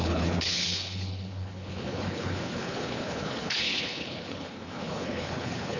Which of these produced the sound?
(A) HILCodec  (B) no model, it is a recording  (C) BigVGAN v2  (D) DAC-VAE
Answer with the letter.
A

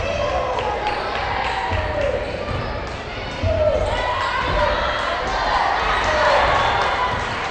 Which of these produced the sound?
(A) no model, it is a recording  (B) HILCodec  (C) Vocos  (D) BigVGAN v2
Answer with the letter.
A